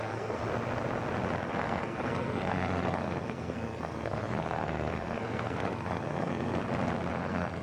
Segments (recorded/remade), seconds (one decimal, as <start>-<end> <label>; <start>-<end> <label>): 0.0-0.4 remade; 0.4-1.5 recorded; 1.5-6.6 remade; 6.6-7.1 recorded; 7.1-7.6 remade